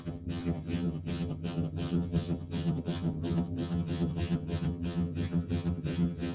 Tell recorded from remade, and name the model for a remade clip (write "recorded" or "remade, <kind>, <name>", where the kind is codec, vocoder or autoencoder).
remade, vocoder, HiFi-GAN